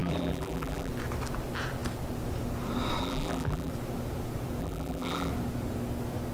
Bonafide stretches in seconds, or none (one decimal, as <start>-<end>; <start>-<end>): 0.9-3.0; 3.7-4.6; 5.3-6.3